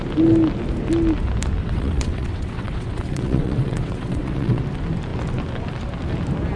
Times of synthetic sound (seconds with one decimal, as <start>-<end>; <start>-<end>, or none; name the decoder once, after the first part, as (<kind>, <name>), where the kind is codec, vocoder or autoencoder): 1.6-4.6 (vocoder, WaveNeXt)